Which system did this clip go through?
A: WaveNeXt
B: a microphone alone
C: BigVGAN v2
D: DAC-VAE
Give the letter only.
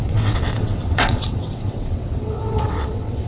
A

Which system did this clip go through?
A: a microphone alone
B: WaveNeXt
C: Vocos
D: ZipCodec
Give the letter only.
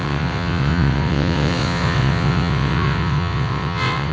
B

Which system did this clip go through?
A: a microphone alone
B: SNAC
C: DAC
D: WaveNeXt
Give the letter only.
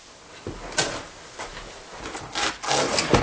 A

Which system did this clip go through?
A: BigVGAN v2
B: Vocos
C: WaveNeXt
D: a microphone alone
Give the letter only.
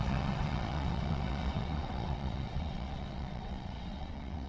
C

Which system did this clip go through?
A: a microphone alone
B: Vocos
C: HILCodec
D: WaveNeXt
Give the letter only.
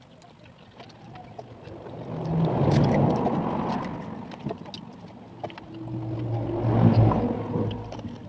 A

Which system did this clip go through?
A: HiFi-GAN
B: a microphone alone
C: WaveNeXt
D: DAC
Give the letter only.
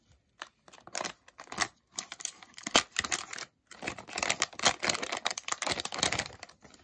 B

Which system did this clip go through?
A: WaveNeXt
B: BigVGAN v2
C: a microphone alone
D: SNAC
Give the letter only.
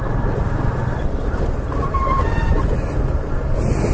C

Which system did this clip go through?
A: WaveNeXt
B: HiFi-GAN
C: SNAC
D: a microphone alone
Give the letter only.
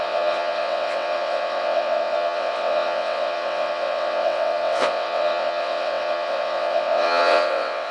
A